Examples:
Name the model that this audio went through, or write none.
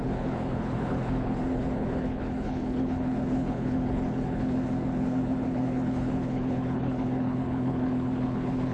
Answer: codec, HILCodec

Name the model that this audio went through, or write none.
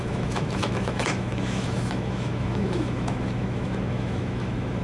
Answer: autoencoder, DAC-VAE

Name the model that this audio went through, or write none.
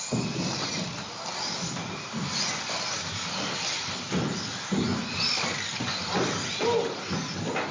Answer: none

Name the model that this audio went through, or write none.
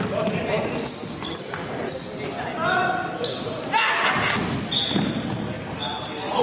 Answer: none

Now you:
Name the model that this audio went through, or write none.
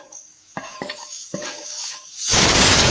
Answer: codec, DAC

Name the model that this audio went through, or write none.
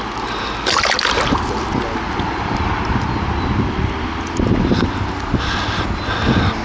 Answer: none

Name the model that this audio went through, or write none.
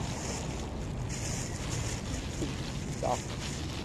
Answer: none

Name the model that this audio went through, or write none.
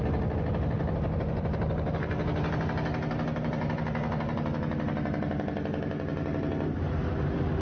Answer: none